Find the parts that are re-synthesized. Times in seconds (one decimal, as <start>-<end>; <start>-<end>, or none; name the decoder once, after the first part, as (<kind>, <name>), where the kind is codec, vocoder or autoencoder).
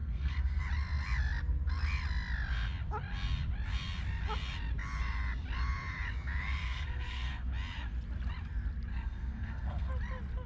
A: 0.0-0.6 (codec, SNAC); 6.6-7.5; 8.9-9.9